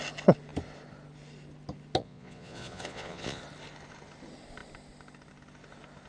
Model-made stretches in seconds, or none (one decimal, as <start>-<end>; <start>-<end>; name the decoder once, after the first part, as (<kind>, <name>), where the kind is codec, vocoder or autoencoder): 2.0-3.4 (vocoder, Vocos)